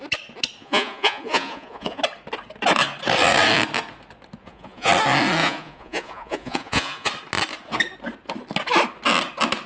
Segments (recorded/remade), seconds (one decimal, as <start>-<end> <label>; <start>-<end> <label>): 0.0-0.6 recorded; 0.6-2.0 remade; 2.0-4.4 recorded; 4.4-4.9 remade; 4.9-5.4 recorded; 5.4-7.1 remade; 7.1-9.7 recorded